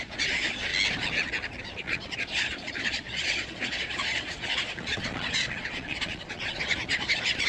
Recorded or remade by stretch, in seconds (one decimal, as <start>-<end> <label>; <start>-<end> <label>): 0.0-0.7 remade; 0.7-1.6 recorded; 1.6-7.5 remade